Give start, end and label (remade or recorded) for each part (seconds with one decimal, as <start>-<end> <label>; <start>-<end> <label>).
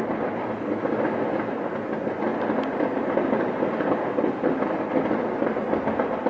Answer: 0.0-6.3 recorded